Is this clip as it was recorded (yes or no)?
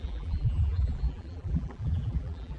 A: no